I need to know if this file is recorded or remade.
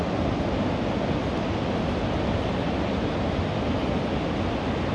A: recorded